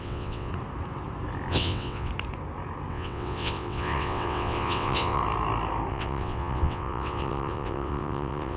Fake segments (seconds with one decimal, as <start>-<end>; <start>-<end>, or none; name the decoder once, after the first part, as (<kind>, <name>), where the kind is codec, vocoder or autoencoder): 0.0-0.5 (vocoder, WaveNeXt); 1.5-2.1; 2.9-5.2; 5.9-8.6